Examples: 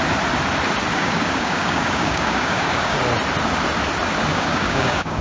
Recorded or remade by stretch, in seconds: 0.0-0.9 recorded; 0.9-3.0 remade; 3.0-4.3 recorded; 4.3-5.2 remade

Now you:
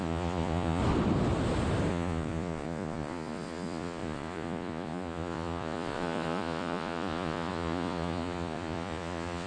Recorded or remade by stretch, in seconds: 0.0-0.8 remade; 0.8-1.9 recorded; 1.9-9.5 remade